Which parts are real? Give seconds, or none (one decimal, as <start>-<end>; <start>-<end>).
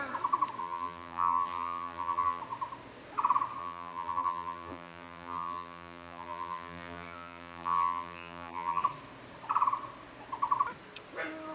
0.0-0.6; 2.4-3.6; 8.8-11.5